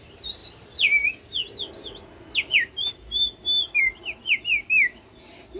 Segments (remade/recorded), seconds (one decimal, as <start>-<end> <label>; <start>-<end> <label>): 0.0-5.6 recorded